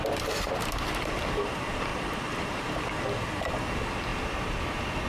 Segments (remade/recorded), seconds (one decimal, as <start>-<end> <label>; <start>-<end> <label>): 0.0-1.9 recorded; 1.9-2.8 remade; 2.8-5.1 recorded